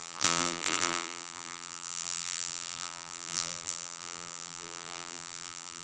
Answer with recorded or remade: remade